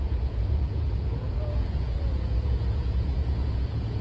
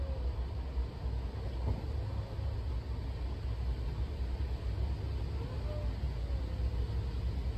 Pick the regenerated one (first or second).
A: first